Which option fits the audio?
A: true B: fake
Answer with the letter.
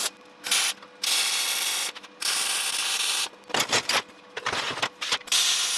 A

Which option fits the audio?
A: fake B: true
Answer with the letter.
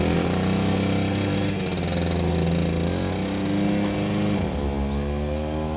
B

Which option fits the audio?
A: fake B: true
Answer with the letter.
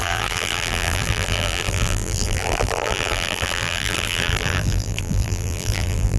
A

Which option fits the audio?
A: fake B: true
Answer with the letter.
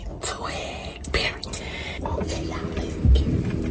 A